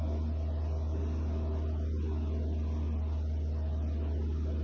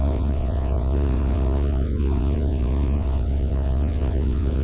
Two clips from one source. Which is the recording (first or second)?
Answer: first